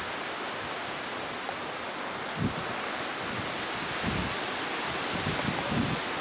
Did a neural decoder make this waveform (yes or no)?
no